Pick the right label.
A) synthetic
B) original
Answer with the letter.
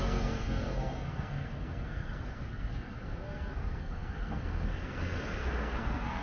A